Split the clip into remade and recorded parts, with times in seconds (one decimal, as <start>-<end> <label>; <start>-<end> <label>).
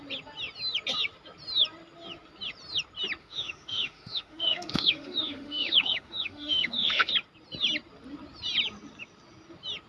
0.0-3.2 recorded; 3.2-7.1 remade; 7.1-9.9 recorded